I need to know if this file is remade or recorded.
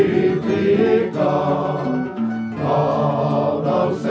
recorded